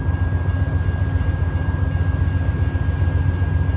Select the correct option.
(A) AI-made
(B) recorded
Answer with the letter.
B